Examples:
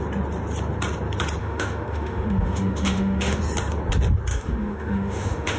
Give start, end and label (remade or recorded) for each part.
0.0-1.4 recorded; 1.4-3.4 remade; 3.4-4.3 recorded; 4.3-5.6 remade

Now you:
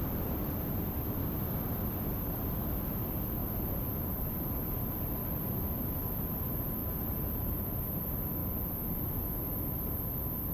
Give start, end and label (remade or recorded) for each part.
0.0-6.8 recorded; 6.8-7.8 remade; 7.8-10.5 recorded

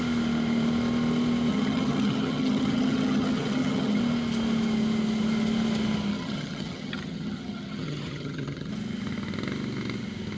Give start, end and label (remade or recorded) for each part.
0.0-1.5 recorded; 1.5-4.0 remade; 4.0-6.1 recorded; 6.1-8.7 remade; 8.7-10.4 recorded

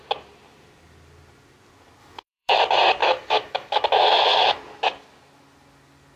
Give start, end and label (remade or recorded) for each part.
0.0-2.0 recorded; 2.0-2.6 remade; 2.6-3.0 recorded; 3.0-4.6 remade; 4.6-6.2 recorded